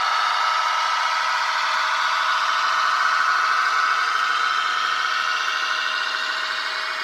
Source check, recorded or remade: recorded